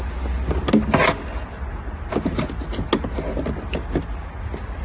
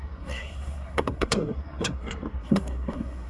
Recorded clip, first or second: first